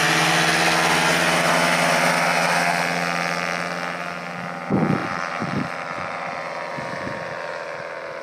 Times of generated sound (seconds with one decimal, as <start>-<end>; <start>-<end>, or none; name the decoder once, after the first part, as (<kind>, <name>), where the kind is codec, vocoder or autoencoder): 5.0-6.3 (vocoder, BigVGAN v2)